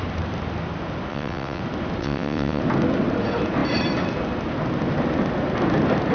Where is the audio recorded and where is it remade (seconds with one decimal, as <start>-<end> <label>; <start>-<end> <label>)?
0.0-1.1 recorded; 1.1-1.6 remade; 1.6-2.0 recorded; 2.0-2.6 remade; 2.6-6.1 recorded